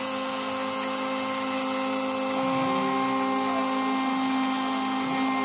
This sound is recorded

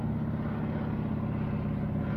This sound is recorded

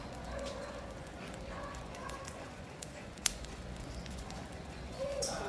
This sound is remade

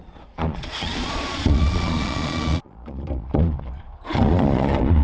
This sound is remade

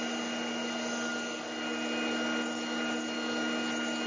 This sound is recorded